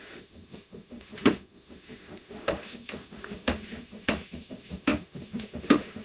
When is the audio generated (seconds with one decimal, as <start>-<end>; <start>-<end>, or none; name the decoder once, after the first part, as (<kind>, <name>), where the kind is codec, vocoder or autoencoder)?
0.0-6.0 (autoencoder, DAC-VAE)